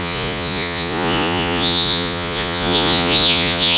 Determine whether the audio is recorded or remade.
remade